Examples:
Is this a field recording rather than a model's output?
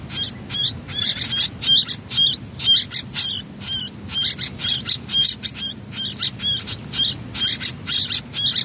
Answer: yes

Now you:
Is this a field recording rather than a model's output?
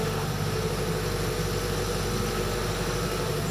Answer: yes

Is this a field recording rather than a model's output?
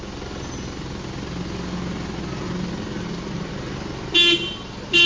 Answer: yes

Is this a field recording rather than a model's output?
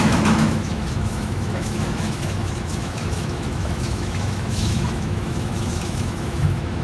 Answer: no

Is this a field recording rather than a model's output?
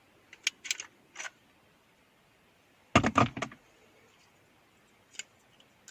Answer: yes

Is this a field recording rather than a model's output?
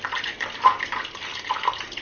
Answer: yes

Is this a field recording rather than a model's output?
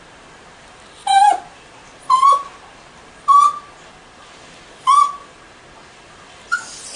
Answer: yes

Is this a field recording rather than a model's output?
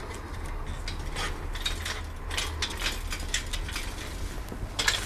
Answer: yes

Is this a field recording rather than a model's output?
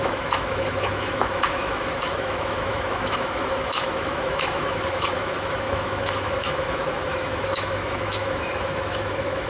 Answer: no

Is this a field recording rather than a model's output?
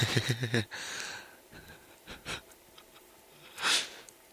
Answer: yes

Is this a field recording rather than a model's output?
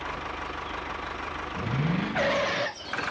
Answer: yes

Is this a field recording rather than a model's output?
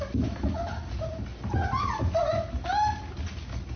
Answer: yes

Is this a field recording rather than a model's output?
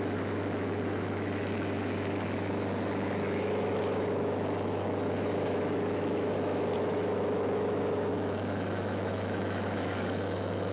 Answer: no